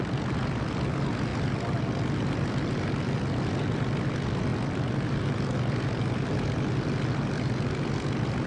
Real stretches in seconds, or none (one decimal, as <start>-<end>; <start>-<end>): 0.0-8.5